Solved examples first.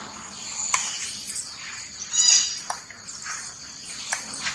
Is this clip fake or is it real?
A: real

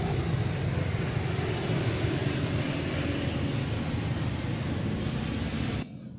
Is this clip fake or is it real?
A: real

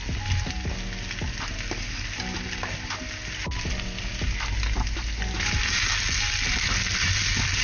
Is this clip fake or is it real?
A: real